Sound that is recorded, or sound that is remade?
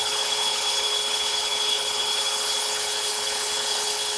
remade